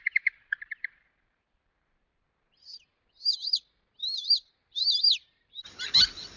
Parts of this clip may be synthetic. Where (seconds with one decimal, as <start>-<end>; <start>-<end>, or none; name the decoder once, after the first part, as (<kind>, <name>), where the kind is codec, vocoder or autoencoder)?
0.0-3.3 (vocoder, BigVGAN v2); 4.0-4.9